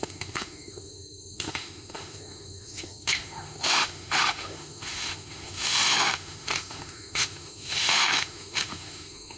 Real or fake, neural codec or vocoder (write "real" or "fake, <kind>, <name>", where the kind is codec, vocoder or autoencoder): fake, autoencoder, DAC-VAE